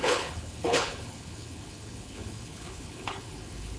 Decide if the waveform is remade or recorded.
remade